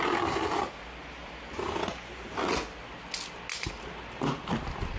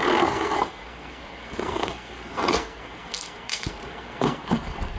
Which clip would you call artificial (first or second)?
second